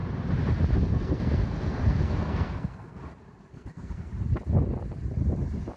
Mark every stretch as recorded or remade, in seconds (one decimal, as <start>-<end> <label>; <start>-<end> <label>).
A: 0.0-0.9 recorded; 0.9-3.0 remade; 3.0-3.5 recorded; 3.5-4.1 remade; 4.1-5.8 recorded